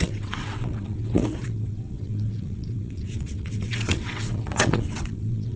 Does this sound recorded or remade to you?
remade